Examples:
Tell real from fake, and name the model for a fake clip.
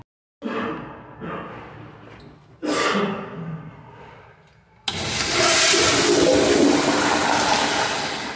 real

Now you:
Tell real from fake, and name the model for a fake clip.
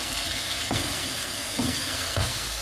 fake, codec, SNAC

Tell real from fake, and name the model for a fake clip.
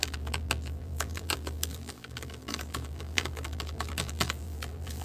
fake, vocoder, BigVGAN v2